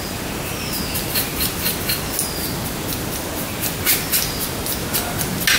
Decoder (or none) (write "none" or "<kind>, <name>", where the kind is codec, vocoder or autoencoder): none